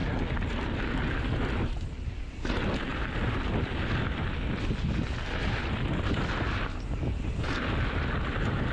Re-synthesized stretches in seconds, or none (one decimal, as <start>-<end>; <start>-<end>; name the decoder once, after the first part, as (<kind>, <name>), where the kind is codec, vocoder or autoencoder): none

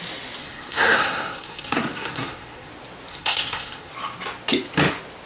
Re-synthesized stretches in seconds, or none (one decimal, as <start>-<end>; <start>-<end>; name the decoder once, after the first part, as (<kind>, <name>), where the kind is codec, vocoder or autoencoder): 0.4-2.7 (codec, SNAC); 3.1-3.9

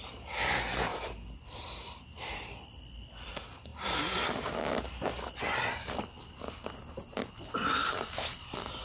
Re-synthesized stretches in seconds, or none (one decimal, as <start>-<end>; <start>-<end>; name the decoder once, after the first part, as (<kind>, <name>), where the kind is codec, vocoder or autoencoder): 0.9-3.3 (vocoder, BigVGAN v2)